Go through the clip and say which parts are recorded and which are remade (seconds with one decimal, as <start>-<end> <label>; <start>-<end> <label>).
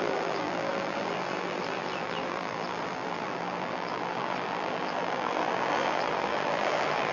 0.0-7.1 remade